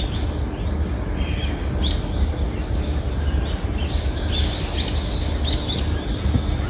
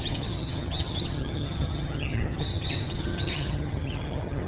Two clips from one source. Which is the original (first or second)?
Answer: first